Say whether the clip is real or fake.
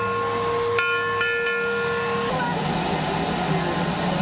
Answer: real